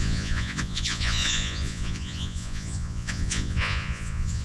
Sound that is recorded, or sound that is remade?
remade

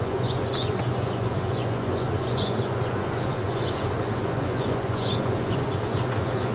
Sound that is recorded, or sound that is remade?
remade